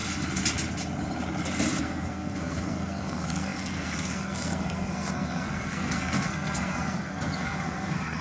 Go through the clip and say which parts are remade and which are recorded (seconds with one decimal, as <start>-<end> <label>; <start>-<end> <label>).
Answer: 0.0-1.8 recorded; 1.8-8.2 remade